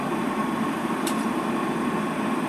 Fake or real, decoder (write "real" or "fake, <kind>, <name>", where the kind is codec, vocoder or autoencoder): fake, vocoder, BigVGAN v2